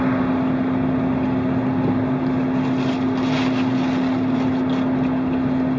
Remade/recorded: recorded